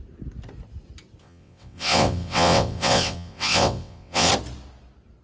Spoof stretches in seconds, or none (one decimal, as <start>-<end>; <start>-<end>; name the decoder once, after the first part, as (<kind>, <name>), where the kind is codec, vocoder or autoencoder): 1.2-4.3 (vocoder, WaveNeXt)